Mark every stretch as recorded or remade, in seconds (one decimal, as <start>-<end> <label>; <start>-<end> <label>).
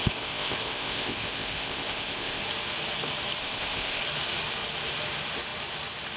0.0-2.4 remade; 2.4-3.4 recorded; 3.4-4.0 remade; 4.0-6.2 recorded